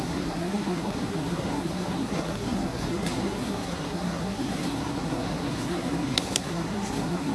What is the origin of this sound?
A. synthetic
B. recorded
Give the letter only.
A